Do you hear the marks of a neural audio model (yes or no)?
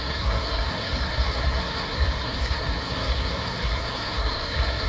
yes